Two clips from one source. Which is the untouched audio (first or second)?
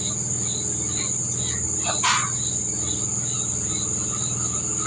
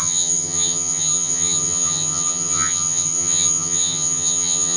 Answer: first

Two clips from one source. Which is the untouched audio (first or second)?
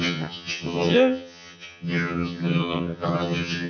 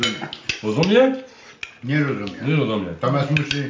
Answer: second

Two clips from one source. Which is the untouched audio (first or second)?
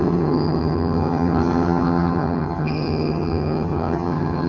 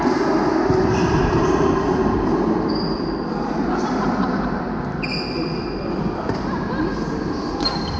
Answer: second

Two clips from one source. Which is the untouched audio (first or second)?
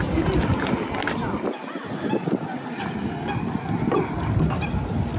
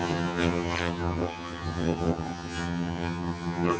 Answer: first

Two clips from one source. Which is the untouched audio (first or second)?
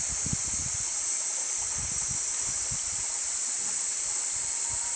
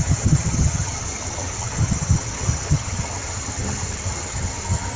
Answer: first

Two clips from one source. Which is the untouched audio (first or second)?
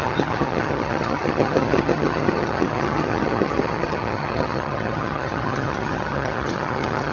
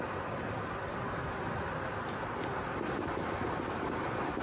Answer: second